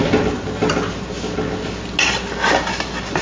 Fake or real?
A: real